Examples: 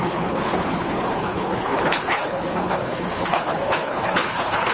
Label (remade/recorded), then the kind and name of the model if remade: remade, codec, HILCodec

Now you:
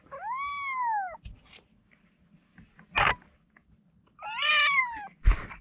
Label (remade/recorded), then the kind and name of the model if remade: recorded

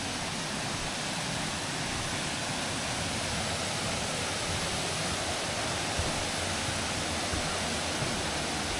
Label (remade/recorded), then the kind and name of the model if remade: recorded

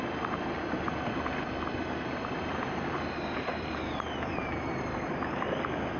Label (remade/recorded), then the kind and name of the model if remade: remade, vocoder, BigVGAN v2